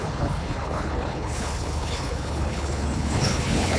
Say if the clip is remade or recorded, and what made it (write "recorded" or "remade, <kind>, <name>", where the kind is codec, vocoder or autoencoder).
remade, codec, HILCodec